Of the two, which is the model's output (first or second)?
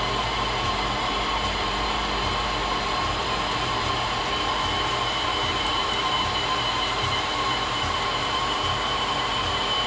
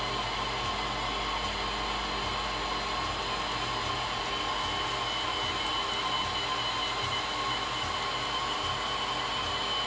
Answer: first